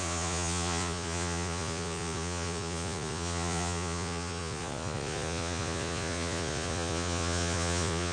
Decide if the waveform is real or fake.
fake